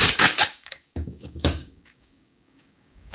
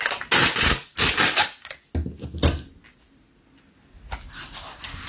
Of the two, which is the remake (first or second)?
first